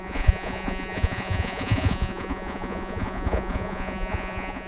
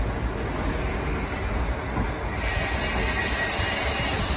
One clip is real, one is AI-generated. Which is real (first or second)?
second